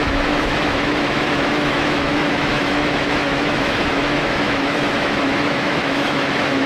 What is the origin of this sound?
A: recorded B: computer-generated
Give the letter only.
B